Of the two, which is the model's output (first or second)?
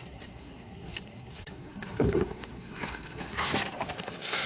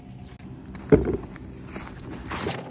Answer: first